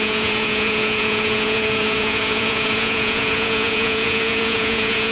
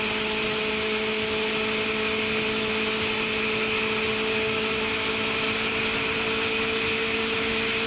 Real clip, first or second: second